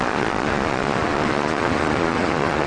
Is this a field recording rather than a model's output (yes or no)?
no